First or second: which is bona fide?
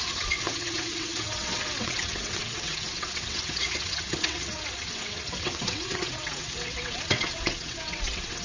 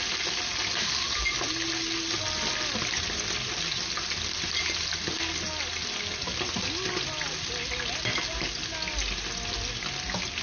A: second